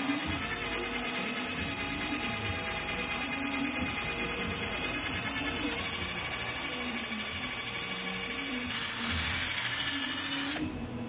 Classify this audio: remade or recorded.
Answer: recorded